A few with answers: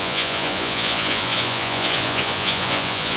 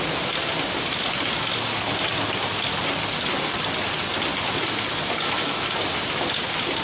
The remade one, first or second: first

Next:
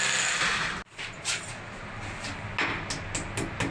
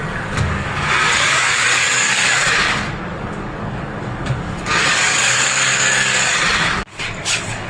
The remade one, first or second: second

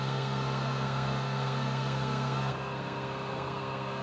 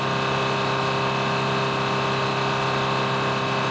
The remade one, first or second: first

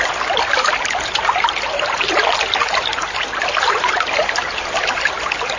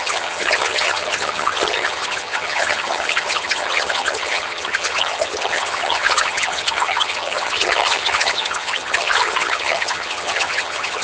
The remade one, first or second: second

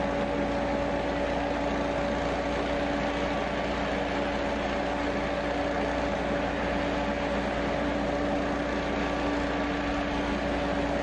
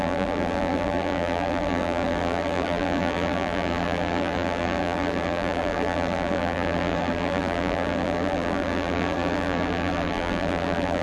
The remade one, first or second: second